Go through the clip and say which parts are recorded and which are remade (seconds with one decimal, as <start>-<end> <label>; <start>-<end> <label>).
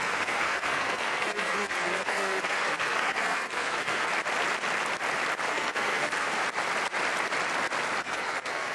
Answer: 0.0-4.1 remade; 4.1-5.5 recorded; 5.5-6.4 remade; 6.4-8.0 recorded; 8.0-8.7 remade